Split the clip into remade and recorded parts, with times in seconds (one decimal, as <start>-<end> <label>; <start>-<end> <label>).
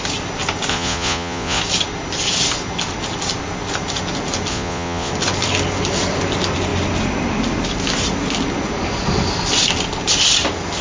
0.0-0.7 recorded; 0.7-1.6 remade; 1.6-4.5 recorded; 4.5-5.1 remade; 5.1-10.8 recorded